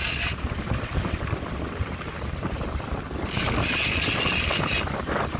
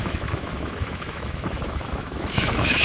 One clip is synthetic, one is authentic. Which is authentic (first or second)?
first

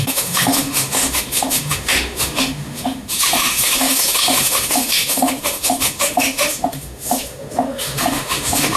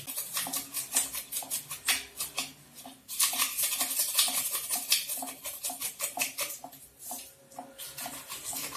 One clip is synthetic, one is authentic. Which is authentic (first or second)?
second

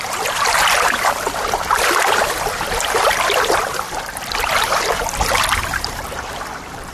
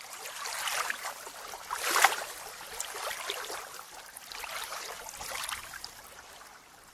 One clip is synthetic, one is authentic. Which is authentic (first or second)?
second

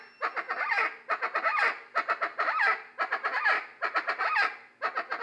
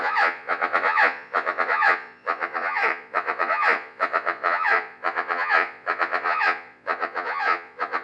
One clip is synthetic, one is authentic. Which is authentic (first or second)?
first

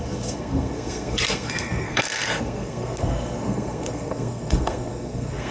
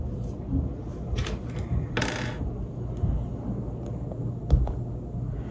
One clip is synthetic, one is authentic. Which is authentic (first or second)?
second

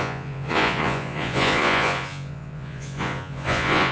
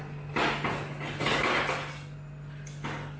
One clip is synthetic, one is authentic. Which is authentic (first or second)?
second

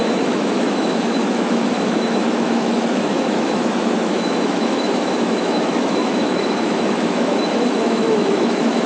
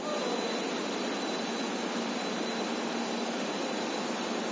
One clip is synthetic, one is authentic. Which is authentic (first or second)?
second